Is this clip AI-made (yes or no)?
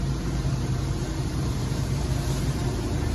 yes